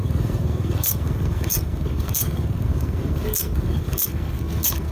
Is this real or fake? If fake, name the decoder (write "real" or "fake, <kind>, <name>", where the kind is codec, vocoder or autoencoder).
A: fake, codec, SNAC